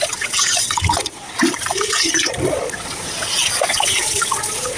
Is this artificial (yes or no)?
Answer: yes